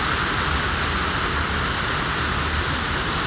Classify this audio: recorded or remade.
recorded